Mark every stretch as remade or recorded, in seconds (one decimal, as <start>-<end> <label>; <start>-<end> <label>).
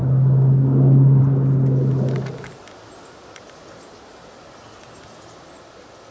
0.0-6.1 recorded